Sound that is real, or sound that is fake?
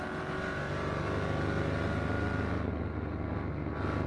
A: real